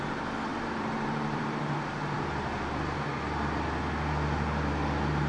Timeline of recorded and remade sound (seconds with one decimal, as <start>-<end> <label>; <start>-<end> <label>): 0.0-0.5 recorded; 0.5-2.6 remade; 2.6-5.3 recorded